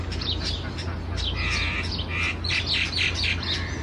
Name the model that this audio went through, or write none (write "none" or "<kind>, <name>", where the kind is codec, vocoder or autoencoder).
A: none